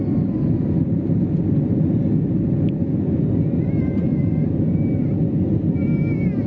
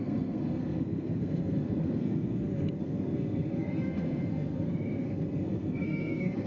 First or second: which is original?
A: first